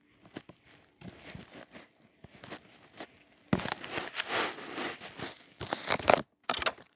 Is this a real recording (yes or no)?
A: yes